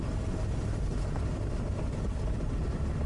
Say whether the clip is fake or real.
real